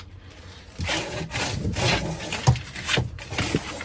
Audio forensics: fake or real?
real